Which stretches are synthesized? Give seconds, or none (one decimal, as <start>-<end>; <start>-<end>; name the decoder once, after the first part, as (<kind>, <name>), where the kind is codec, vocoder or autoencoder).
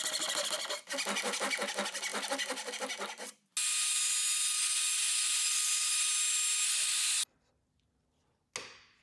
none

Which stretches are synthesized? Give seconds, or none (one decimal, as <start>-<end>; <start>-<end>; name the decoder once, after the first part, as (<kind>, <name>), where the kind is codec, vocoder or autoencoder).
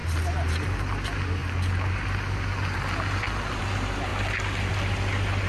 none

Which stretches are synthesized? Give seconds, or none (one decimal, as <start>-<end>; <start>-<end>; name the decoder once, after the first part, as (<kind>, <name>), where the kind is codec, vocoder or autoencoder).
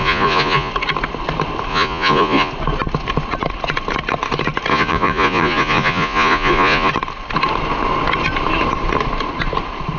0.0-0.7 (vocoder, Vocos); 1.7-2.5; 4.7-6.9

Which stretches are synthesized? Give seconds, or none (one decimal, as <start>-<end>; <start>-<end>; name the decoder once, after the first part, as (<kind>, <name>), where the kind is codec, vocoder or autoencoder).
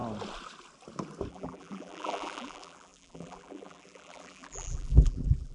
1.3-5.5 (vocoder, BigVGAN v2)